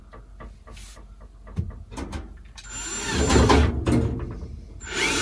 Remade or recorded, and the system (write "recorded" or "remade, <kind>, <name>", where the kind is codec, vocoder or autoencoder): recorded